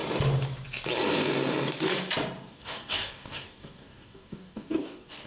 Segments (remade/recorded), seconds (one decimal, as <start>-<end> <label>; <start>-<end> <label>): 0.0-2.5 recorded; 2.5-5.3 remade